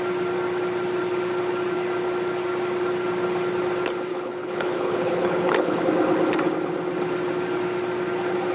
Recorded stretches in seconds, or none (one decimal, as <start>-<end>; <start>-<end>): 0.0-4.1; 5.8-8.5